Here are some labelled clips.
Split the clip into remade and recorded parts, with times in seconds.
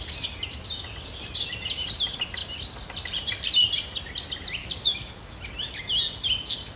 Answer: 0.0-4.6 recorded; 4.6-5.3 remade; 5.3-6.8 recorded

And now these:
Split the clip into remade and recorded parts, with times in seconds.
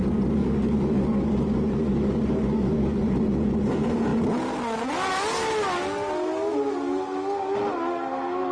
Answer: 0.0-0.4 recorded; 0.4-3.0 remade; 3.0-8.5 recorded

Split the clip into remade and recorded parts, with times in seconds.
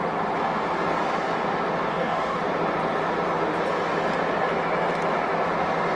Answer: 0.0-1.9 recorded; 1.9-2.4 remade; 2.4-6.0 recorded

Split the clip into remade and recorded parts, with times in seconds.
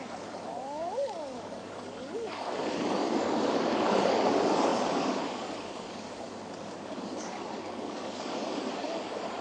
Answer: 0.0-9.4 remade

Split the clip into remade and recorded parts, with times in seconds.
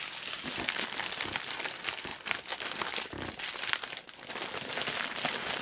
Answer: 0.0-5.6 recorded